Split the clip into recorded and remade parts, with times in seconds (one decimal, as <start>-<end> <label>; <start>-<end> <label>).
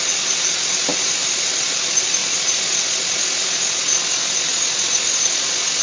0.0-0.9 recorded; 0.9-1.5 remade; 1.5-2.2 recorded; 2.2-2.8 remade; 2.8-5.8 recorded